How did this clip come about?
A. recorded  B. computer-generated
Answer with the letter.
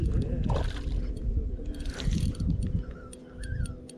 A